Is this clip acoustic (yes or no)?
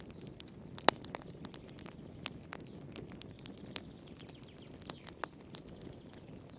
yes